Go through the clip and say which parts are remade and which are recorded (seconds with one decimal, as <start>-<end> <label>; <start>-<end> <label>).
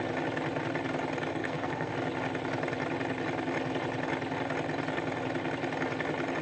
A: 0.0-1.3 recorded; 1.3-1.9 remade; 1.9-6.4 recorded